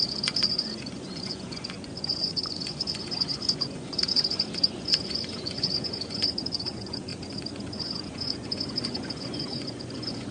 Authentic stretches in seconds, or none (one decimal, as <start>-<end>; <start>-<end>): none